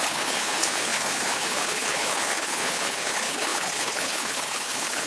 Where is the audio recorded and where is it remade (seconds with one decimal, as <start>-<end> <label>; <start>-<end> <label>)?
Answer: 0.0-5.1 remade